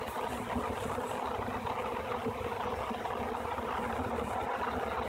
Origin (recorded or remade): recorded